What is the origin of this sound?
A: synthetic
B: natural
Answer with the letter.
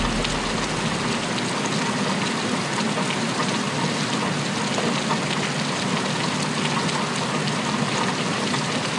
B